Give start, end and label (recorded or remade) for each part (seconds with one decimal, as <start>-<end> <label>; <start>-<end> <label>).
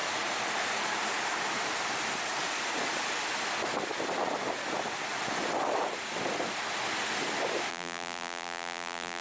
0.0-7.7 recorded; 7.7-9.2 remade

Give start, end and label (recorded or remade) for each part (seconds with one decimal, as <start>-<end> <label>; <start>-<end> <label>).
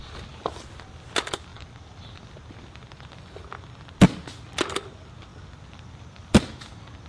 0.0-1.5 recorded; 1.5-3.1 remade; 3.1-7.1 recorded